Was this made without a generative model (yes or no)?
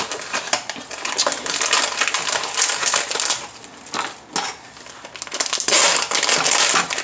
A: yes